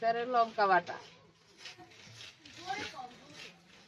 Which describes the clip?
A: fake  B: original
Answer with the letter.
B